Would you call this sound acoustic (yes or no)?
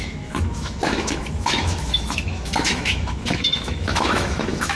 no